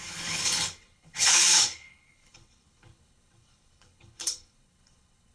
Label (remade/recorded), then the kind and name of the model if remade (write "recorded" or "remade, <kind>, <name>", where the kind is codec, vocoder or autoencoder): remade, codec, HILCodec